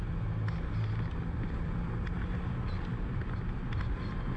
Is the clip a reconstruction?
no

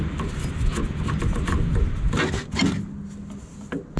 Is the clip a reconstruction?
no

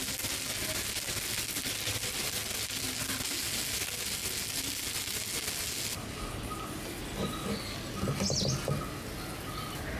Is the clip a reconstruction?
no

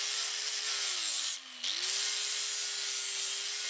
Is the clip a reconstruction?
no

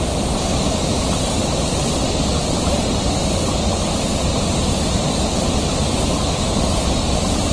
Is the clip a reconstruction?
no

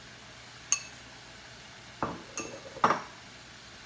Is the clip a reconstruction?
no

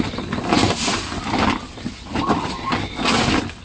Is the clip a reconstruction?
no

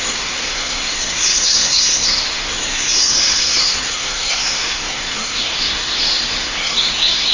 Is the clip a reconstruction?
yes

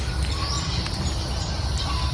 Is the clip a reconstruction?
no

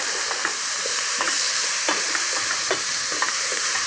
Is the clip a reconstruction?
yes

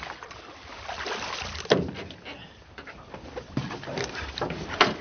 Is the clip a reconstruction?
no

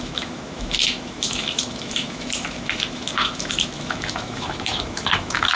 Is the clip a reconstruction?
yes